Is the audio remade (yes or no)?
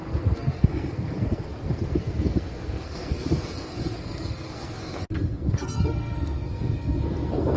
yes